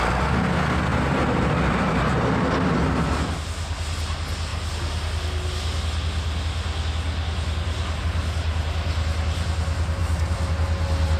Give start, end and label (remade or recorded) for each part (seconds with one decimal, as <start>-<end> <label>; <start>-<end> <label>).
0.0-0.9 recorded; 0.9-3.4 remade; 3.4-10.0 recorded; 10.0-10.5 remade; 10.5-11.2 recorded